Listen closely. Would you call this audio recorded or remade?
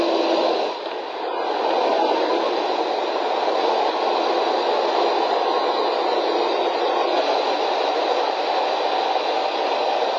recorded